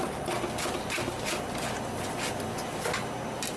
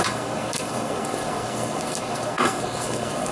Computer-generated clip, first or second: second